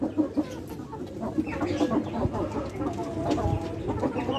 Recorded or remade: recorded